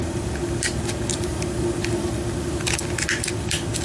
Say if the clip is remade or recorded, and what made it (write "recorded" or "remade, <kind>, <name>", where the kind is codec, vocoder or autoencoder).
recorded